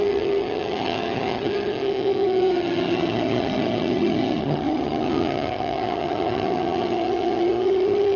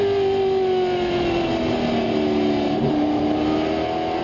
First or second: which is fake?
first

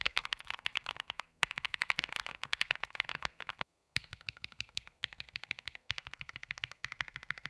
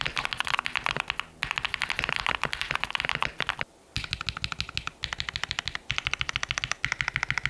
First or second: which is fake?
first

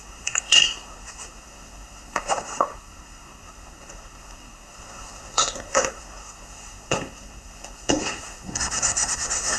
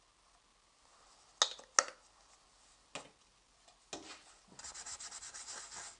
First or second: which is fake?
first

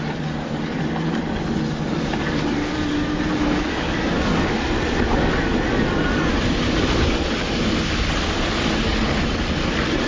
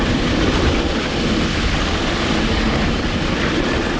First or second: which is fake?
second